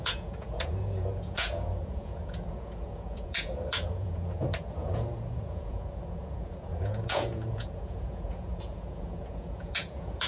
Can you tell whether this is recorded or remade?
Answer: remade